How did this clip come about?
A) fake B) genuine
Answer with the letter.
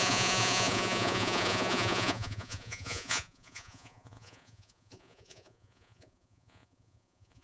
A